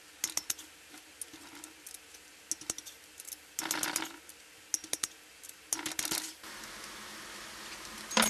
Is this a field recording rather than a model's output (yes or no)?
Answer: yes